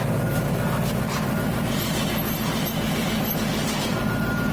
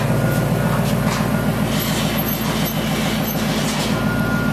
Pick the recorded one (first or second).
second